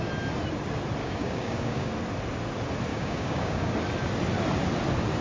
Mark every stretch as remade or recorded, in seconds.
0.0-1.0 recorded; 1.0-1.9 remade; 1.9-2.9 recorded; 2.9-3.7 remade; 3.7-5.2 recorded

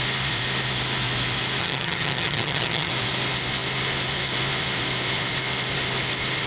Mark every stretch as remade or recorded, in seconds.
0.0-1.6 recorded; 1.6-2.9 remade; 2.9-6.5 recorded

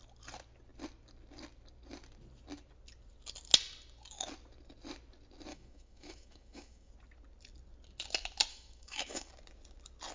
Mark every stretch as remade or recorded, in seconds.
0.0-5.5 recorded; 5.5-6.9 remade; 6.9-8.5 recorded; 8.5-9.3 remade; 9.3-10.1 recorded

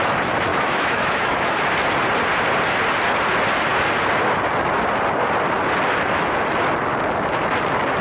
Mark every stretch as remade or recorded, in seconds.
0.0-0.5 recorded; 0.5-1.6 remade; 1.6-8.0 recorded

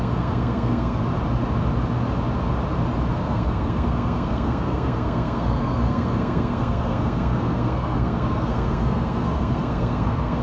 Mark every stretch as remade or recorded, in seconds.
0.0-1.0 remade; 1.0-3.1 recorded; 3.1-10.4 remade

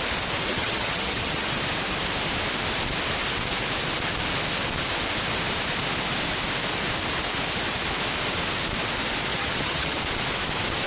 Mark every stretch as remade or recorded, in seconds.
0.0-0.5 recorded; 0.5-1.5 remade; 1.5-9.3 recorded; 9.3-10.0 remade; 10.0-10.9 recorded

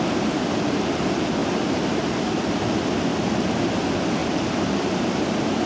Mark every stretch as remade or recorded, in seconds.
0.0-4.2 recorded; 4.2-5.2 remade; 5.2-5.7 recorded

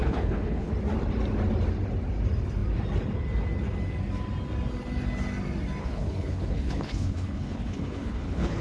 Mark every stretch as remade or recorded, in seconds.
0.0-0.7 remade; 0.7-5.8 recorded; 5.8-8.6 remade